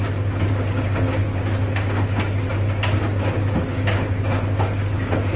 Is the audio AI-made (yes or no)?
no